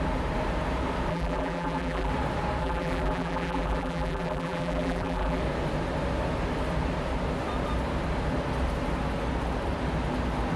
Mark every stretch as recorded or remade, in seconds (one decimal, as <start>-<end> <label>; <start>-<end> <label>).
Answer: 0.0-1.1 recorded; 1.1-2.1 remade; 2.1-2.6 recorded; 2.6-5.4 remade; 5.4-10.6 recorded